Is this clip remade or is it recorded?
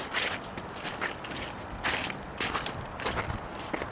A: recorded